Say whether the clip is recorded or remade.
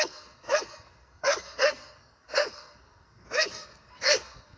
remade